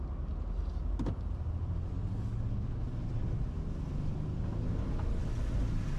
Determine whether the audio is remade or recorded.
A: recorded